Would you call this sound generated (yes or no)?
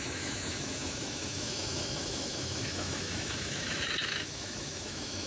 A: yes